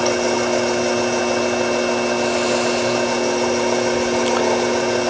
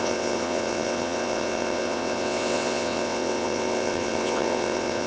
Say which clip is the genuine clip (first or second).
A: first